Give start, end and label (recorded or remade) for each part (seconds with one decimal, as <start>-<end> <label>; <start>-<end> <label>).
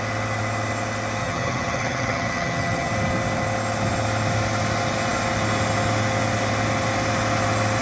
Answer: 0.0-1.2 recorded; 1.2-2.9 remade; 2.9-7.8 recorded